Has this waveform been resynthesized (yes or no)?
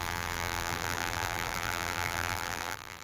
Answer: yes